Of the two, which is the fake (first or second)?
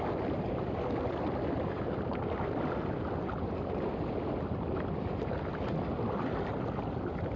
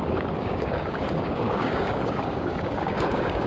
second